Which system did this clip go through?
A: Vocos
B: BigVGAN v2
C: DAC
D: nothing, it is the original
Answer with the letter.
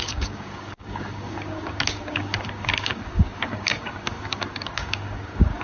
C